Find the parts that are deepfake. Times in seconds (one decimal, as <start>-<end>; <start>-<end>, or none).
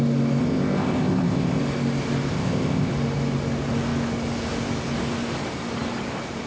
0.4-1.6; 2.3-2.9